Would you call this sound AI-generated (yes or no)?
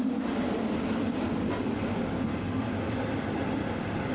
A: no